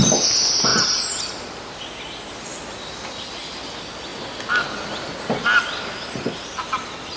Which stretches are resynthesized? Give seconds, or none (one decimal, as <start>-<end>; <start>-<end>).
none